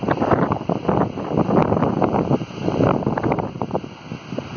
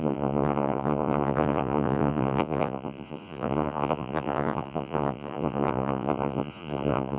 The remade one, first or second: second